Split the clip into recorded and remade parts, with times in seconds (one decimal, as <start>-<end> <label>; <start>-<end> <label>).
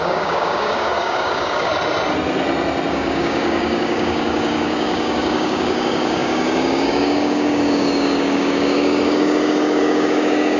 0.0-1.7 remade; 1.7-2.9 recorded; 2.9-10.6 remade